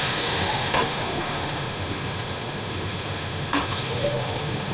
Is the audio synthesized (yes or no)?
yes